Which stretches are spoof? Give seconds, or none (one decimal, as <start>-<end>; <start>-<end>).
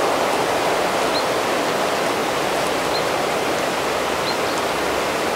2.2-4.4